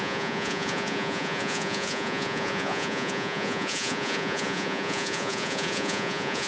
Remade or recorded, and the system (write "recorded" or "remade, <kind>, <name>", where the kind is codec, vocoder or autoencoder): remade, vocoder, Vocos